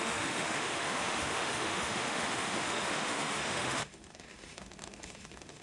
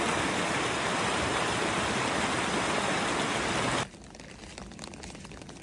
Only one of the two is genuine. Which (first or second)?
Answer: second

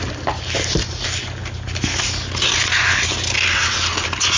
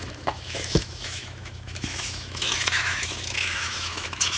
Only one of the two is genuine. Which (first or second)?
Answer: first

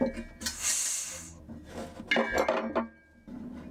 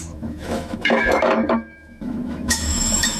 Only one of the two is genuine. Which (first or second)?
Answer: first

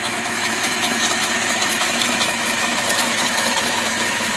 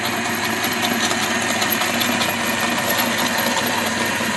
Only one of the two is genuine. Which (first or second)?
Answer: second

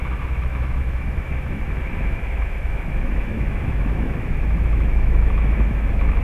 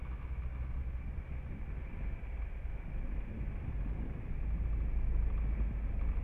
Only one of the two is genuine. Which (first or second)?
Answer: second